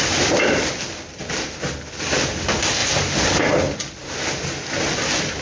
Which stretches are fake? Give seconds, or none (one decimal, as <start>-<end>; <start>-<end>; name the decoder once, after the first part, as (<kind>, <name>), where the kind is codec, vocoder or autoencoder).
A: none